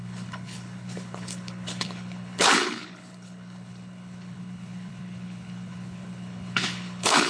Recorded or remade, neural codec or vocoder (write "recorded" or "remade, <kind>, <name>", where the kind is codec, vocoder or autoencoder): remade, codec, HILCodec